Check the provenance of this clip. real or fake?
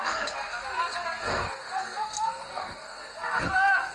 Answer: fake